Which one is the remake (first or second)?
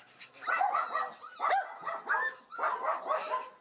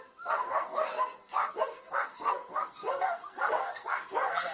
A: second